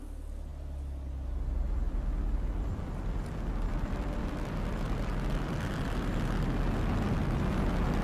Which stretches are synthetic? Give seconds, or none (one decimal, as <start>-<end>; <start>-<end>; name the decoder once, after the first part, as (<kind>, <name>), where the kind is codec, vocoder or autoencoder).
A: none